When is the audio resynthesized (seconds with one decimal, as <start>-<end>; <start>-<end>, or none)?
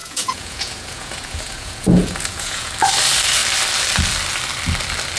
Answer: 0.0-2.7